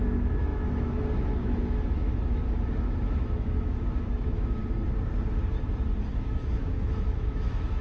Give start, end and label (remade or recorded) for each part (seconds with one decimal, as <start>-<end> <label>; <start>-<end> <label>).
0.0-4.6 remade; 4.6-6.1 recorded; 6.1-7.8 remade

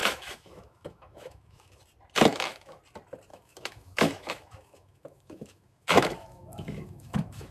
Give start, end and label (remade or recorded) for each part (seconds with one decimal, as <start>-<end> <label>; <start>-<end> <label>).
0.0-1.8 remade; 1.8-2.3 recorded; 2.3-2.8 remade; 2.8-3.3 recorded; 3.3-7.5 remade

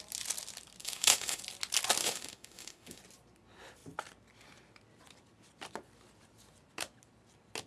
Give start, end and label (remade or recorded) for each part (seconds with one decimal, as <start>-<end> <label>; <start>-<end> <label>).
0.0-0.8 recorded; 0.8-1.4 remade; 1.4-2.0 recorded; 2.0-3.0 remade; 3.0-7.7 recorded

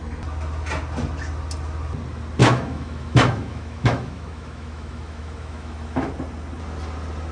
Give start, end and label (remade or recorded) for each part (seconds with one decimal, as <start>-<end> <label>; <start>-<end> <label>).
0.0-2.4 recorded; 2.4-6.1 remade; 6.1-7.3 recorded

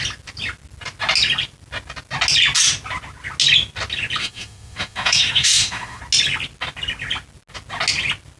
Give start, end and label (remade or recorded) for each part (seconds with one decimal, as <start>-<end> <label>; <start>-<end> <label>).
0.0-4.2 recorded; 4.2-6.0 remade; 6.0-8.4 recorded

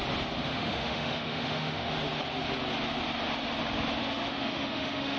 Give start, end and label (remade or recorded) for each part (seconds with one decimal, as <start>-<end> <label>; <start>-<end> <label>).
0.0-0.4 recorded; 0.4-1.9 remade; 1.9-4.0 recorded; 4.0-5.2 remade

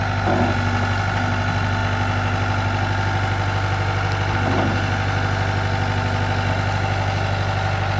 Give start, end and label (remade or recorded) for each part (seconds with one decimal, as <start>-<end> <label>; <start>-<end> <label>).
0.0-8.0 recorded

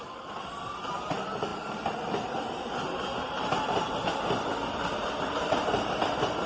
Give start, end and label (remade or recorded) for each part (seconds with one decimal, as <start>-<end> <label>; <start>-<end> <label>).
0.0-6.5 recorded